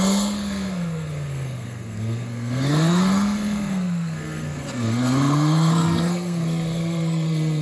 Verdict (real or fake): fake